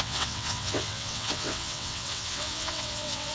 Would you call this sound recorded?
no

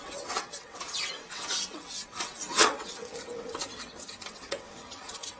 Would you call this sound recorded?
no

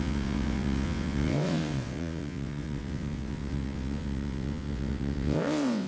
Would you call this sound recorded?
no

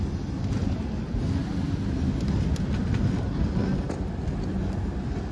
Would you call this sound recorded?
yes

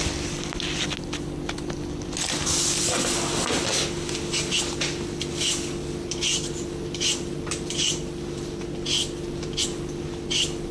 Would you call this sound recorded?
yes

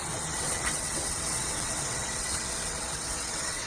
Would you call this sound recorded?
no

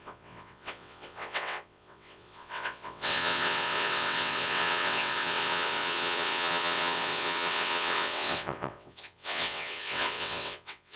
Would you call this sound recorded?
no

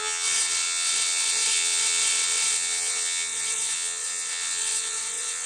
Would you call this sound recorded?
no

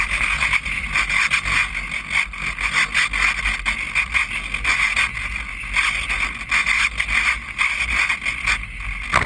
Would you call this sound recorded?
yes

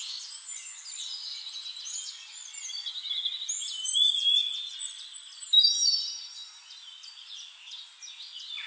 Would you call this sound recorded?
yes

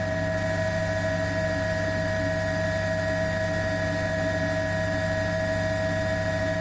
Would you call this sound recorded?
yes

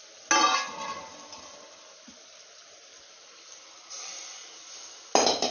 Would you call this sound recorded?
yes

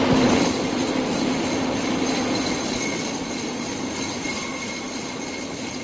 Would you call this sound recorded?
yes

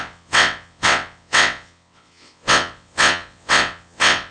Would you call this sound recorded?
no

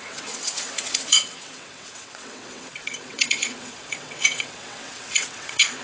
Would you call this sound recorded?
no